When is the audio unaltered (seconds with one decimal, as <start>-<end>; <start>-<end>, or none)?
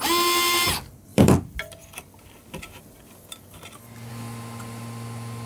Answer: 0.0-1.1; 4.1-5.5